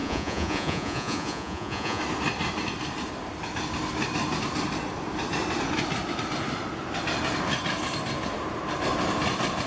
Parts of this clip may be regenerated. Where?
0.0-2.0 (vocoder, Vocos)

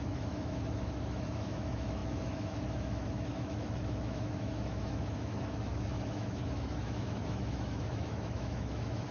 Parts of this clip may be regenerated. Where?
0.0-9.1 (autoencoder, DAC-VAE)

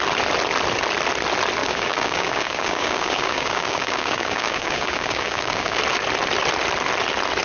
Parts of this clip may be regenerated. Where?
1.6-5.8 (codec, DAC)

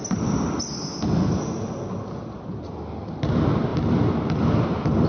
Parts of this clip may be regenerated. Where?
3.7-5.1 (vocoder, BigVGAN v2)

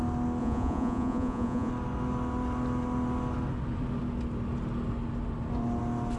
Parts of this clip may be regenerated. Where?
0.4-1.7 (vocoder, Vocos)